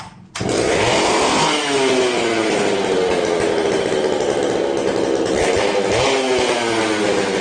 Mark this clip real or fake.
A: real